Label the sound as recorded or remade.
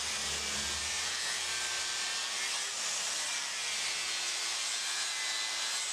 recorded